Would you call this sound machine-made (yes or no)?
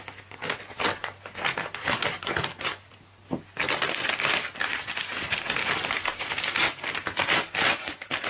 no